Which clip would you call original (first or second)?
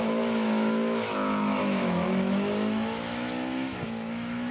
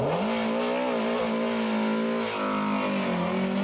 second